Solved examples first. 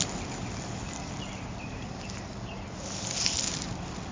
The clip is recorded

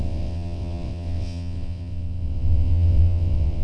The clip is remade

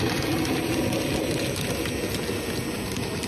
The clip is recorded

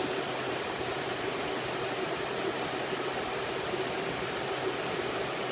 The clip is recorded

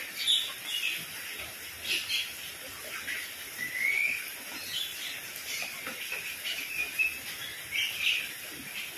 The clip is recorded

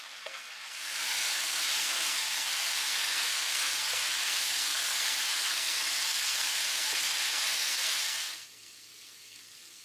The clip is remade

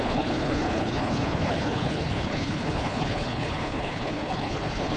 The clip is remade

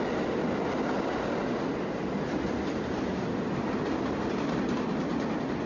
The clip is recorded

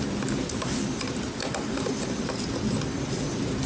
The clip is recorded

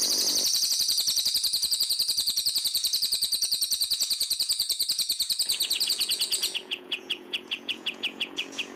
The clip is remade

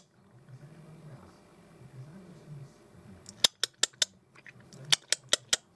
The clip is recorded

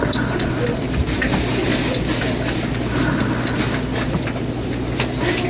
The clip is recorded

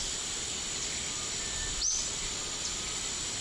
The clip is recorded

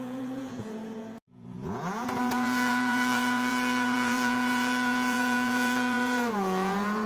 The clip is remade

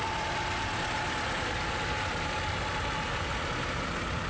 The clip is recorded